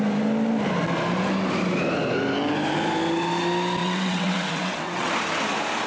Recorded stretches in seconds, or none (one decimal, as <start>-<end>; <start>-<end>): 0.0-3.8; 5.1-5.9